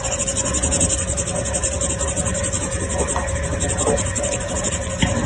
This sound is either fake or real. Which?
real